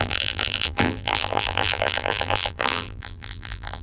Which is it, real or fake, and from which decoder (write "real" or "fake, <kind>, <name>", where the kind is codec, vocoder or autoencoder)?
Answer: fake, vocoder, BigVGAN v2